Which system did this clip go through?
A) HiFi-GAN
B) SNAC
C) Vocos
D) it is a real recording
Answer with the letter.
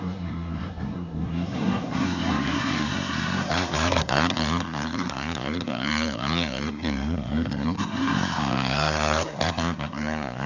B